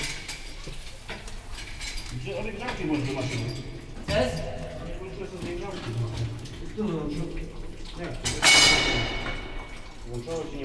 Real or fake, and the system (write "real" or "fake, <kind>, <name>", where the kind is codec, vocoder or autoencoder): real